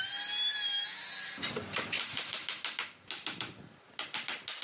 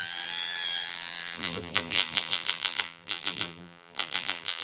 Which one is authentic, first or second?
first